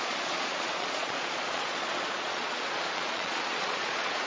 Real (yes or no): no